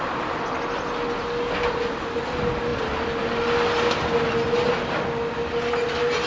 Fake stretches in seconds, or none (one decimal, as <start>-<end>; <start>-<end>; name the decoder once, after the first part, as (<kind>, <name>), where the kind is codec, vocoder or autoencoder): none